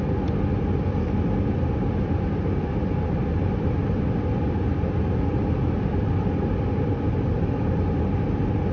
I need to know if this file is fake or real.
real